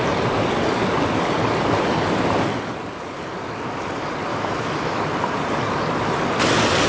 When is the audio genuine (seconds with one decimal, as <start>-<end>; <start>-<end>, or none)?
0.0-4.3; 5.0-6.9